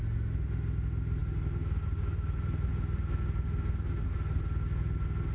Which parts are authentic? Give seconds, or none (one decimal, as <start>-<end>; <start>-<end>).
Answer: 0.0-5.3